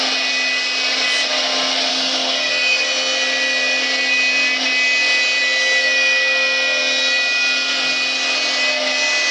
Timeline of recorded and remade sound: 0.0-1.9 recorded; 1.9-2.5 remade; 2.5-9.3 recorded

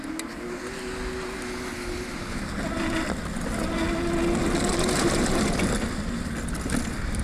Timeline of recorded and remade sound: 0.0-4.7 recorded; 4.7-5.5 remade; 5.5-7.2 recorded

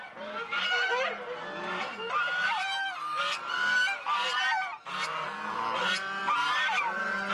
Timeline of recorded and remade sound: 0.0-1.9 recorded; 1.9-3.2 remade; 3.2-6.2 recorded; 6.2-6.8 remade; 6.8-7.3 recorded

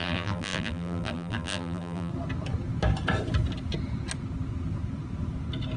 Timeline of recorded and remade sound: 0.0-2.1 remade; 2.1-5.8 recorded